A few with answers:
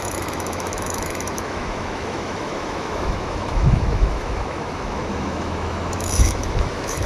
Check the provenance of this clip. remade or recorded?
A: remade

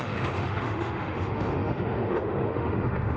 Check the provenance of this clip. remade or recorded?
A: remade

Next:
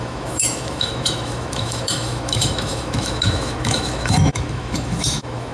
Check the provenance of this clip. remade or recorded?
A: remade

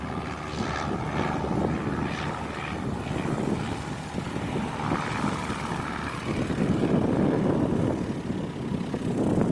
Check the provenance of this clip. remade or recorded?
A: recorded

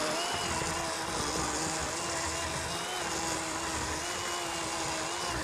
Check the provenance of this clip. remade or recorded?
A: recorded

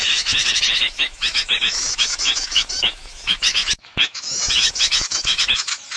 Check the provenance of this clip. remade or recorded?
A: remade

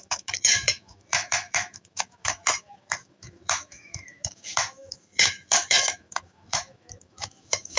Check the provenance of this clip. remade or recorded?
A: remade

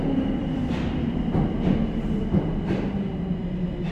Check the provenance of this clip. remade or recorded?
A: recorded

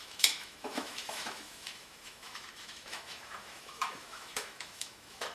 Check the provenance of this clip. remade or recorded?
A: remade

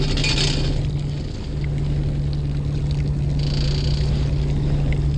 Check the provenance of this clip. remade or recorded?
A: recorded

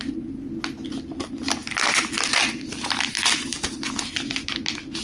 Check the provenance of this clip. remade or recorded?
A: recorded